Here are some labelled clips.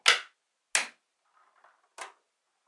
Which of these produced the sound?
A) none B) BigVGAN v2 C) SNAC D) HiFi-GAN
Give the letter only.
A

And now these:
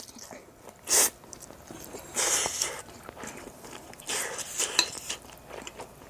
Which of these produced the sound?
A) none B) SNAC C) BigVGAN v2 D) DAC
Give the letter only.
A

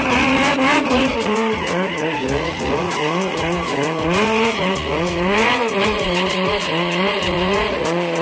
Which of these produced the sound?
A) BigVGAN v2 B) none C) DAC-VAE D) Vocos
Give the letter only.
D